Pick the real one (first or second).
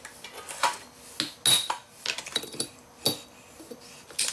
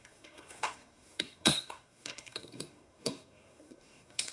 first